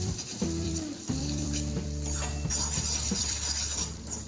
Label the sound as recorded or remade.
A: remade